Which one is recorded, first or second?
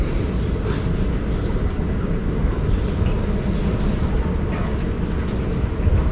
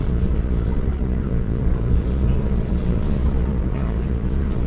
first